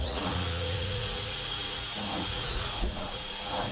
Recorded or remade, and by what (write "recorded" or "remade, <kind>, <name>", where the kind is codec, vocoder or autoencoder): remade, vocoder, Vocos